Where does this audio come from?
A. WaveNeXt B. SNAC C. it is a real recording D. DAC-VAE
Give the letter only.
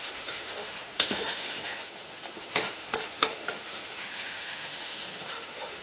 D